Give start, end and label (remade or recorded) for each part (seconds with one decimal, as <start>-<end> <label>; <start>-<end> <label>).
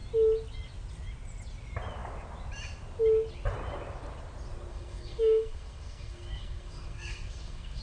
0.0-4.7 recorded; 4.7-7.8 remade